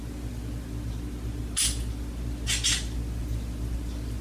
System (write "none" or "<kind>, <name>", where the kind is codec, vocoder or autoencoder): none